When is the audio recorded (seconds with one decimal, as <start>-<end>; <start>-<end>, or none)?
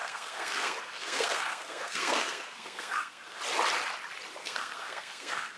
3.4-4.4